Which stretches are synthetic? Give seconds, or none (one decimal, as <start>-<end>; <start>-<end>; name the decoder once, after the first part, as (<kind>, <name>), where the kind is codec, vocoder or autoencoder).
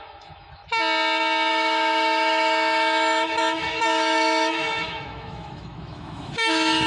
0.0-0.6 (autoencoder, DAC-VAE); 1.5-6.9